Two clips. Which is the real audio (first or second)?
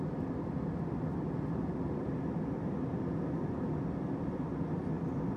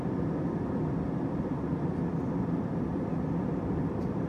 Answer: first